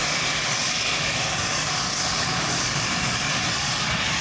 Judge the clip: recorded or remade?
remade